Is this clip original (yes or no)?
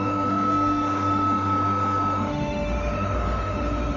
no